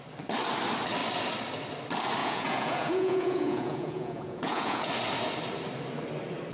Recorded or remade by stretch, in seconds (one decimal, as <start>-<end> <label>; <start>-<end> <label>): 0.0-2.2 recorded; 2.2-4.9 remade; 4.9-6.5 recorded